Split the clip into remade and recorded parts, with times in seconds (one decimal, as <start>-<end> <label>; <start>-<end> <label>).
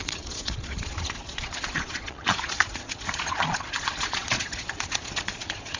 0.0-5.8 remade